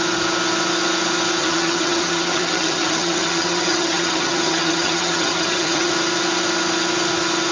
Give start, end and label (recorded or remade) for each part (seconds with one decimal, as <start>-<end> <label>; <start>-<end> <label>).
0.0-1.4 recorded; 1.4-5.9 remade; 5.9-7.5 recorded